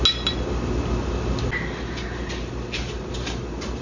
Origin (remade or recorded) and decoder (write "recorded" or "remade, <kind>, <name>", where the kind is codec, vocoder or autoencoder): recorded